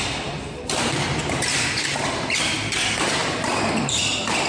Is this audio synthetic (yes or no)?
no